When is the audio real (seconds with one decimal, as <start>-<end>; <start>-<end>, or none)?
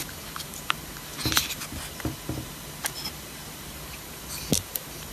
1.1-3.7